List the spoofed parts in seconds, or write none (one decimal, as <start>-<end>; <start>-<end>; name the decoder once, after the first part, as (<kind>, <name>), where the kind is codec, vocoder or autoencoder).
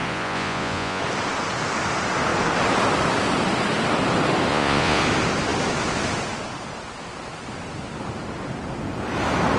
0.0-1.0 (vocoder, Vocos); 4.5-5.0